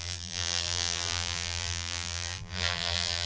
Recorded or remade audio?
remade